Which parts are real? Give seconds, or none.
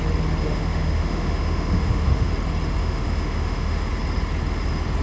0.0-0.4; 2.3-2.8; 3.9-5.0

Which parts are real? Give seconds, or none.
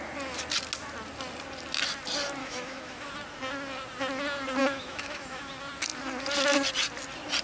0.0-2.4; 3.1-4.6; 5.5-7.4